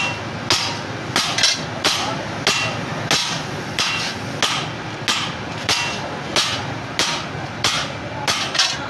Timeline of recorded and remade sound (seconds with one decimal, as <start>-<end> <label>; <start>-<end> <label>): 0.0-3.2 recorded; 3.2-4.4 remade; 4.4-8.9 recorded